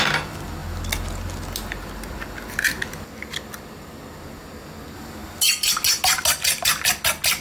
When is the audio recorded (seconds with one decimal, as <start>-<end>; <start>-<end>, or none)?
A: 0.0-7.4